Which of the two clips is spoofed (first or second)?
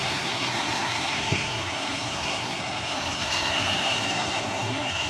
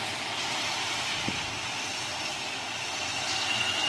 first